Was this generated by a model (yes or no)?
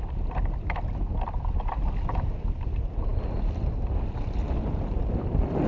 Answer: yes